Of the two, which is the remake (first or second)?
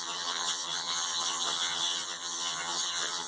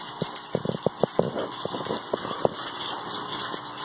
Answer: first